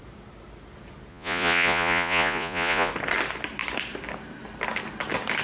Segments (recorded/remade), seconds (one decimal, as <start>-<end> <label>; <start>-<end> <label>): 0.0-1.1 recorded; 1.1-2.9 remade; 2.9-5.4 recorded